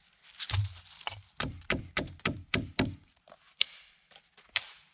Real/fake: fake